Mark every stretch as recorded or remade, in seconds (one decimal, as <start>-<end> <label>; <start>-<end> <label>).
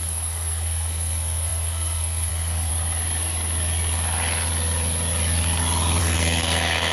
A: 0.0-2.7 remade; 2.7-6.0 recorded; 6.0-6.9 remade